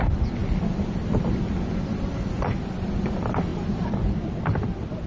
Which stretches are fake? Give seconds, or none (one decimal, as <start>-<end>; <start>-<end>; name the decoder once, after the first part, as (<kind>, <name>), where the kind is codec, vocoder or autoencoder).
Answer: none